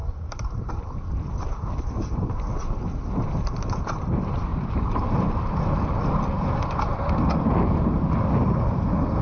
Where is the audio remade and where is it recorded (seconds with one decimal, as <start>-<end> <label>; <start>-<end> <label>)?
0.0-0.7 remade; 0.7-4.5 recorded; 4.5-5.1 remade; 5.1-9.2 recorded